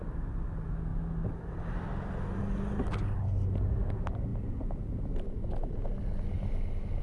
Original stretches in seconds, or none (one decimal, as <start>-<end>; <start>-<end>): 0.0-7.0